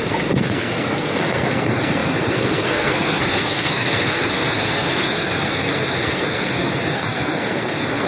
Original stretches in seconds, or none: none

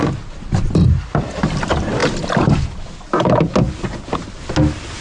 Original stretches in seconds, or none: 0.0-5.0